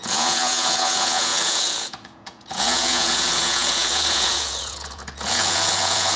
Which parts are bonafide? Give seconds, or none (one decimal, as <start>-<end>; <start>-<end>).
none